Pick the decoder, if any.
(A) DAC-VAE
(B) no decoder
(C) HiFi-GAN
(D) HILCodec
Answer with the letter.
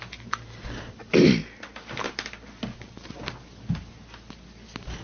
B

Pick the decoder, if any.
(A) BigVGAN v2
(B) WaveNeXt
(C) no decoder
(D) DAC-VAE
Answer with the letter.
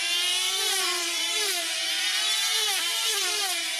A